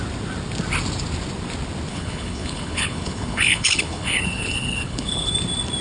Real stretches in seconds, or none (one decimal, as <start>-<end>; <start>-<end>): 0.0-1.9; 5.3-5.8